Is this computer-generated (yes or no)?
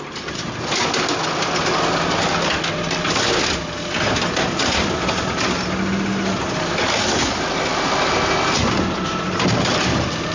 no